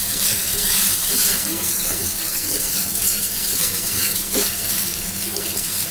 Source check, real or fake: fake